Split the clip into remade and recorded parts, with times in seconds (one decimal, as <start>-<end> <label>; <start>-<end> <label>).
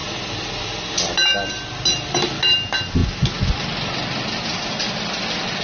0.0-5.6 recorded